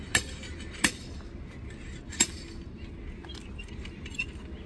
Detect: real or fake real